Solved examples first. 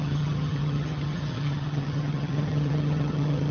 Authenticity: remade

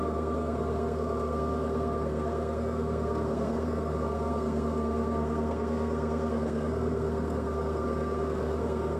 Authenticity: remade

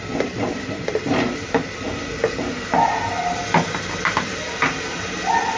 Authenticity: recorded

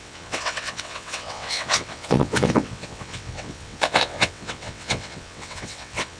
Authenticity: remade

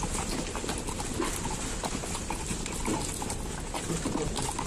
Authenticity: recorded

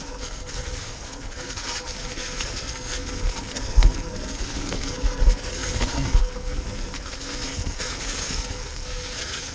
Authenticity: remade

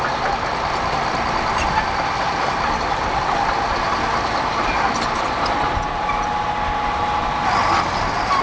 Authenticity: recorded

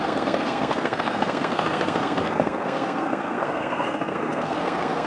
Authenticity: remade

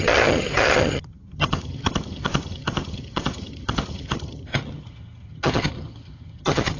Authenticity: remade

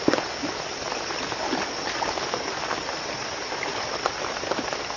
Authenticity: recorded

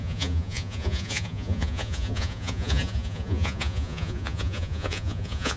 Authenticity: remade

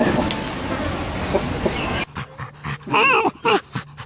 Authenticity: recorded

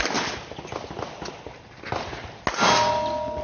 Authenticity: recorded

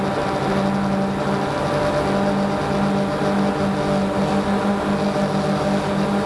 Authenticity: recorded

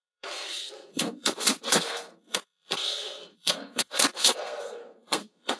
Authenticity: remade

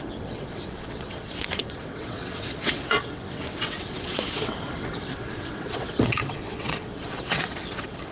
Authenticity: remade